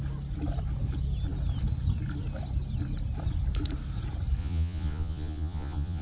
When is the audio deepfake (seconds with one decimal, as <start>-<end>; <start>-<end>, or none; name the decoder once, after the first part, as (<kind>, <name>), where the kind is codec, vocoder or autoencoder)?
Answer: 4.4-6.0 (vocoder, Vocos)